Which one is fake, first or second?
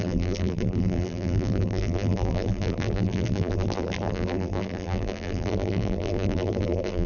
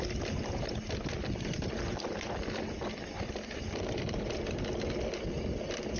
first